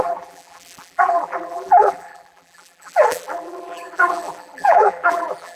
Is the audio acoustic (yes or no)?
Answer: no